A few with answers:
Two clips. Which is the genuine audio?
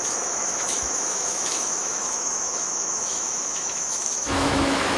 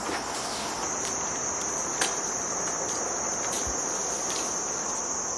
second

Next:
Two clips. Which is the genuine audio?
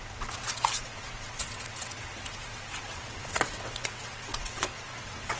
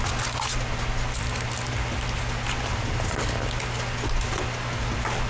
second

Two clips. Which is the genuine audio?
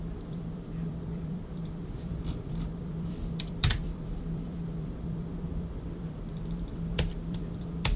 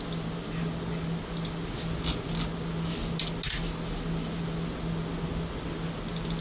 second